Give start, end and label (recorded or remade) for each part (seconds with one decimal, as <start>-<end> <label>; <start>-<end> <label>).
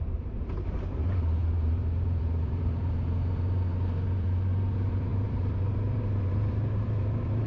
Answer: 0.0-7.5 remade